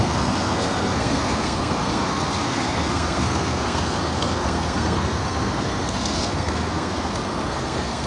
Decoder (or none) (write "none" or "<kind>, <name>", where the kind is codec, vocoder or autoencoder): codec, SNAC